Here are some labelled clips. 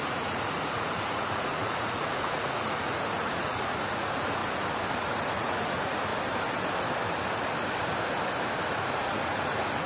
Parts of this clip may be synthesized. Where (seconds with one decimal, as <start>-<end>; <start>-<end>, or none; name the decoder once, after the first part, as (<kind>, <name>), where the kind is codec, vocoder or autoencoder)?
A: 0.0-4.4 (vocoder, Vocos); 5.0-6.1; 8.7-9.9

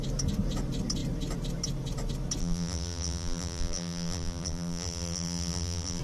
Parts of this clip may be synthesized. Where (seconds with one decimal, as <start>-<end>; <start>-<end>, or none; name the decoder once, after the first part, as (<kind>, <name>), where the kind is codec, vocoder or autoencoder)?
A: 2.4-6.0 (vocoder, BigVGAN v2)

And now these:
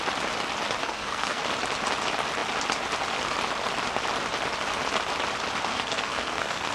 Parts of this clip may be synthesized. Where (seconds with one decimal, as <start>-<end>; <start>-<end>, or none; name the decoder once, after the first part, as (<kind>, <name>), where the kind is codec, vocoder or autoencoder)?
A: 0.8-1.4 (codec, SNAC); 5.7-6.7

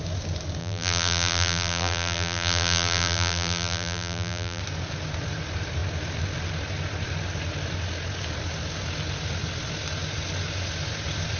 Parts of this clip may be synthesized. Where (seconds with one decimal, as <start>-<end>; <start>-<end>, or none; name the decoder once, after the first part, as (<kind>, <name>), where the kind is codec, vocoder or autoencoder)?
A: 0.6-4.6 (vocoder, BigVGAN v2)

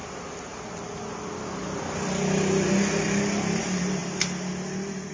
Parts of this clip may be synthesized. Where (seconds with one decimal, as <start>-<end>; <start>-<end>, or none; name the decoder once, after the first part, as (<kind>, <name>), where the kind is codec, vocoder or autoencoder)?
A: none